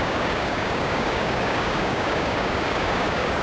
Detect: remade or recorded remade